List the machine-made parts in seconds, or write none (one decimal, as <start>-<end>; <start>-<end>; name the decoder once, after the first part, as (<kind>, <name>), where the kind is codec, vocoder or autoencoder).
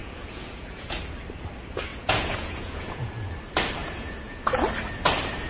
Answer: 0.0-1.0 (vocoder, Vocos); 1.9-3.3; 3.8-4.4